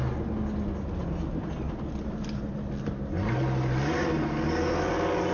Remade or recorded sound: recorded